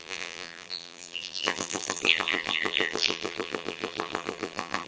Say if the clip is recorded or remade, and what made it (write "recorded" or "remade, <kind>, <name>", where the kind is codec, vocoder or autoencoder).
remade, vocoder, BigVGAN v2